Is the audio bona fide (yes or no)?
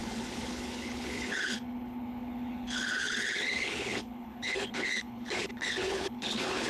no